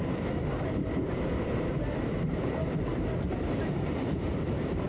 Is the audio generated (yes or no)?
yes